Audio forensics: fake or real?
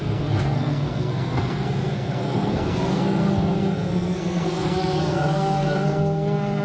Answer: fake